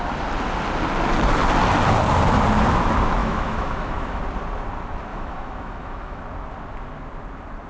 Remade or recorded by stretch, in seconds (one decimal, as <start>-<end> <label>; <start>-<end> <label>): 0.0-3.2 recorded; 3.2-4.2 remade; 4.2-5.1 recorded; 5.1-6.2 remade; 6.2-7.7 recorded